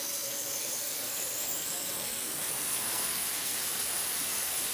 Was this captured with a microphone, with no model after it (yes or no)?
no